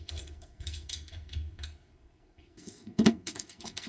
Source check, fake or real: fake